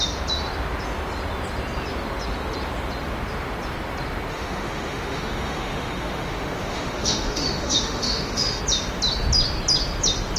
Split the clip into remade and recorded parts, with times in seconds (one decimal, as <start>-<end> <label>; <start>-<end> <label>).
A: 0.0-4.3 recorded; 4.3-8.6 remade; 8.6-10.4 recorded